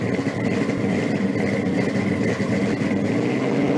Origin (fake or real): real